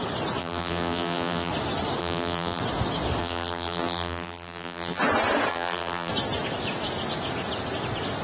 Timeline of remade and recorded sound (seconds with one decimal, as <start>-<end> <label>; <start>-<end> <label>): 0.0-0.4 recorded; 0.4-1.5 remade; 1.5-2.0 recorded; 2.0-2.6 remade; 2.6-3.2 recorded; 3.2-5.0 remade; 5.0-5.5 recorded; 5.5-6.1 remade; 6.1-8.2 recorded